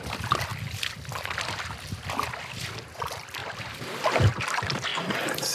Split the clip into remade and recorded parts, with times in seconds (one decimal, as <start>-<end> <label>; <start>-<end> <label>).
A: 0.0-5.5 recorded